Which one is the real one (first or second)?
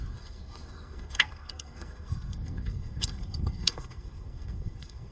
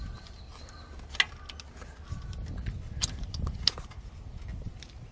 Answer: second